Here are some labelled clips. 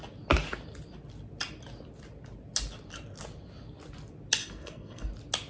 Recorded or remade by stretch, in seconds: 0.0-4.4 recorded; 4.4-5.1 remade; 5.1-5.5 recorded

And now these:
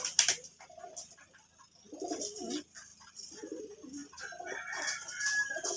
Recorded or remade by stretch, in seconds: 0.0-5.8 recorded

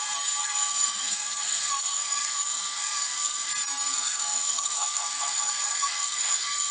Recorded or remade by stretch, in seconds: 0.0-0.4 recorded; 0.4-3.5 remade; 3.5-3.9 recorded; 3.9-6.7 remade

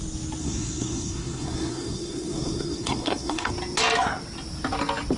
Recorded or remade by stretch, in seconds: 0.0-0.4 recorded; 0.4-3.5 remade; 3.5-5.2 recorded

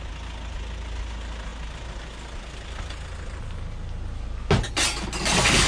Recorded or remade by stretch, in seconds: 0.0-5.7 recorded